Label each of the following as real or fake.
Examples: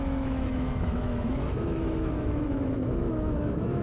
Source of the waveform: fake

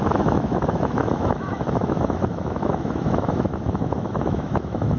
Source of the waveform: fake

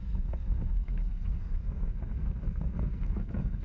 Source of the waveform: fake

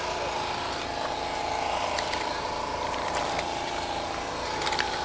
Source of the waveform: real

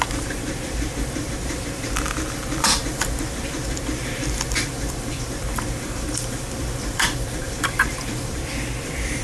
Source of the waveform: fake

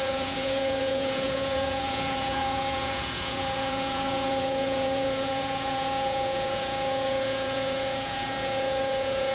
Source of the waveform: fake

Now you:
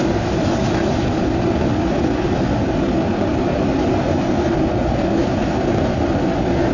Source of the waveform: real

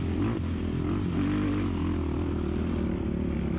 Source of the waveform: real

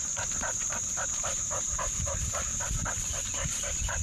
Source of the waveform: fake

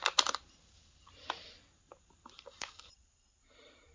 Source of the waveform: real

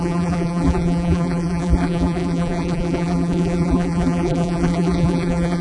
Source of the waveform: fake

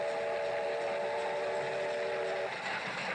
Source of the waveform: real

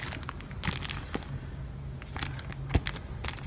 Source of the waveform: real